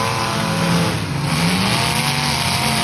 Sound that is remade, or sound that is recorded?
recorded